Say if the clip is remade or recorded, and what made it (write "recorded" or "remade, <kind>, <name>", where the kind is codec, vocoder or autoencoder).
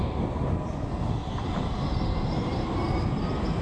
recorded